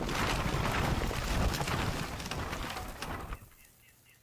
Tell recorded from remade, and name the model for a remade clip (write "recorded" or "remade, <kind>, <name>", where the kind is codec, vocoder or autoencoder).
recorded